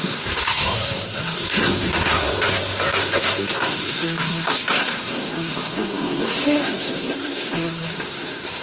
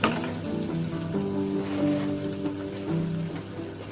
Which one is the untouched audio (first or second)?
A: second